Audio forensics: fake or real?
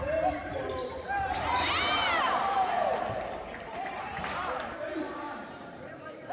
fake